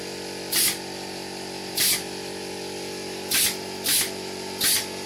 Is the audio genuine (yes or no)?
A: no